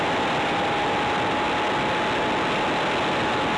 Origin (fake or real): real